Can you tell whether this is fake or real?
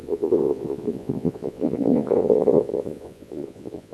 fake